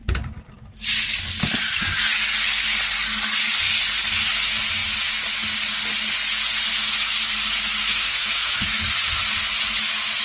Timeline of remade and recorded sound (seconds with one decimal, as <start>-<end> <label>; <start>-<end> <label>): 0.0-7.8 recorded; 7.8-8.8 remade; 8.8-10.2 recorded